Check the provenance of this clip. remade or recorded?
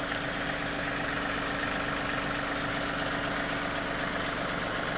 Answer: recorded